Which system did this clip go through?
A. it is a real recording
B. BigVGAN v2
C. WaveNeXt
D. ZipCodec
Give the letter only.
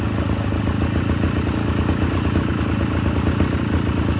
A